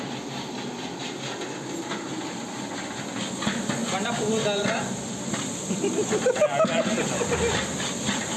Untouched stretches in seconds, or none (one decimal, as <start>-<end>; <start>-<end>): 0.0-8.4